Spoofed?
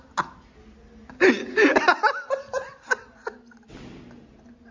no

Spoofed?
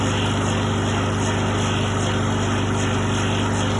no